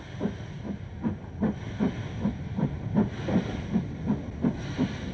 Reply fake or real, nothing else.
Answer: real